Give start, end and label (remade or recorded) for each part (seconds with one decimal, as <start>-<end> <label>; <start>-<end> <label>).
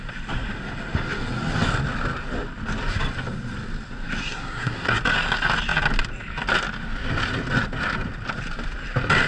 0.0-4.2 recorded; 4.2-5.0 remade; 5.0-9.3 recorded